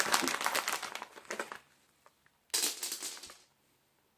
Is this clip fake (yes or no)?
no